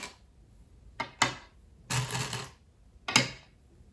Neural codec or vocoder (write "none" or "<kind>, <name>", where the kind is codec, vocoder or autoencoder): none